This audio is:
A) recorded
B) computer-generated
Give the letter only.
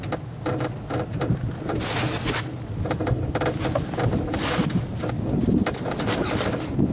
A